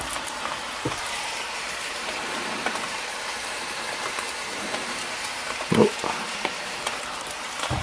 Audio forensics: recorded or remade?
remade